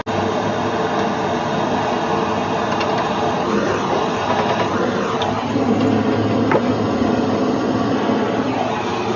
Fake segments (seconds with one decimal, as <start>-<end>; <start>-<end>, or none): none